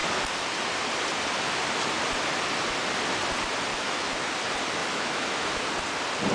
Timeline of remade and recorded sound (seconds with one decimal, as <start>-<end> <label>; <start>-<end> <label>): 0.0-3.7 recorded; 3.7-4.3 remade; 4.3-4.8 recorded; 4.8-5.6 remade; 5.6-6.3 recorded